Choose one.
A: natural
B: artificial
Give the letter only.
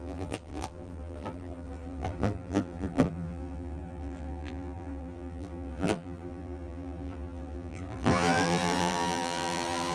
B